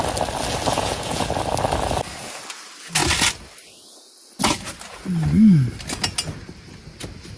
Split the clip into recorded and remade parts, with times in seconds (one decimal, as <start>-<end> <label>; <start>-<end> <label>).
0.0-0.7 recorded; 0.7-1.3 remade; 1.3-7.4 recorded